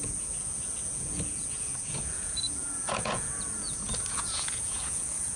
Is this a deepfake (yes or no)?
yes